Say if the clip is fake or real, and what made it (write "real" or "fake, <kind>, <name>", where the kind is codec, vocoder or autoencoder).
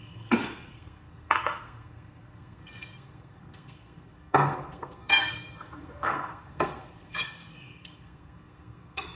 fake, codec, SNAC